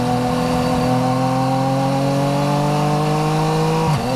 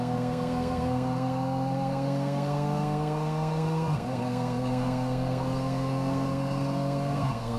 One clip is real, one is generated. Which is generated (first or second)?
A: second